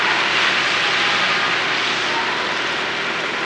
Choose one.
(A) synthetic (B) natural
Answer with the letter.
B